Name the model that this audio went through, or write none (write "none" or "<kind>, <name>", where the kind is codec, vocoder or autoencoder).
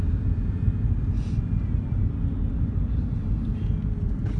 none